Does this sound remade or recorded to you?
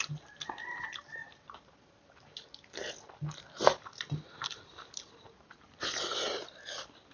recorded